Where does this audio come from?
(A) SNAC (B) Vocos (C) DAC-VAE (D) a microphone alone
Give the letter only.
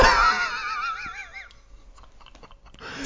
D